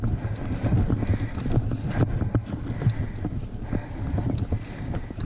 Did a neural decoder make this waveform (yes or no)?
no